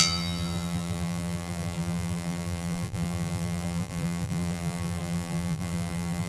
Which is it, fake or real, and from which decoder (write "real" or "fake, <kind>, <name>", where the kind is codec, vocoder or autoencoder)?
fake, vocoder, BigVGAN v2